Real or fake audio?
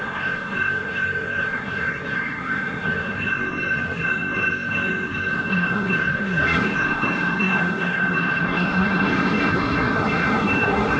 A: fake